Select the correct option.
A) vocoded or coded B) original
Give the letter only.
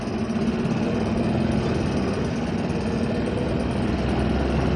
B